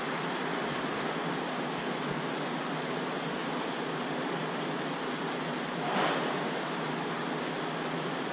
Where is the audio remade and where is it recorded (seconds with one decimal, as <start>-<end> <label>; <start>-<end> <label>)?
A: 0.0-8.3 recorded